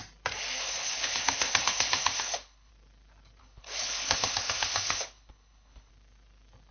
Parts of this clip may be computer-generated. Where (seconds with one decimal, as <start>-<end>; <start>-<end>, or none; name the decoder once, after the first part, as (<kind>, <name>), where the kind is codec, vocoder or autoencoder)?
0.6-2.7 (codec, HILCodec); 3.4-5.9